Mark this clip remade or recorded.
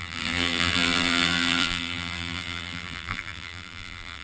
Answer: remade